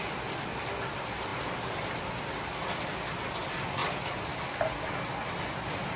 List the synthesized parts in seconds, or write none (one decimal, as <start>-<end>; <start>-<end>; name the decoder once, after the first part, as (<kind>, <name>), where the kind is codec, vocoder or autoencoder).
none